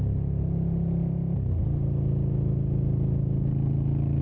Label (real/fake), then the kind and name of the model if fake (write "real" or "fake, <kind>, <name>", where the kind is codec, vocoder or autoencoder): real